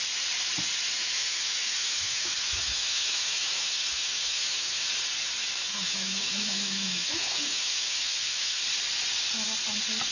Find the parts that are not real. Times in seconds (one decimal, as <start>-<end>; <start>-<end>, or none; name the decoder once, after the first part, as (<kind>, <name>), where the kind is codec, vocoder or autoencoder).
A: 1.0-4.9 (autoencoder, DAC-VAE); 5.7-8.6